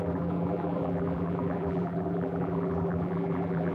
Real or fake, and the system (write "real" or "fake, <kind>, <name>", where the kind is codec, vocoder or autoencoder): fake, vocoder, BigVGAN v2